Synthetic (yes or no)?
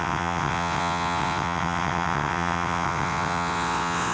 yes